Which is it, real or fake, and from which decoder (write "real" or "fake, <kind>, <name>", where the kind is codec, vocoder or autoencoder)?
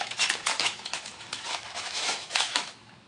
fake, autoencoder, DAC-VAE